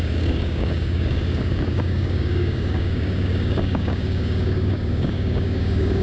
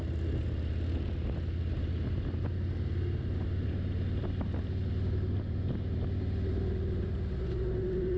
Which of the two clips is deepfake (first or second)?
first